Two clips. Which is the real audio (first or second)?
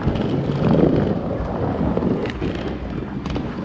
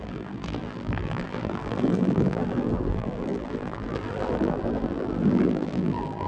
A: first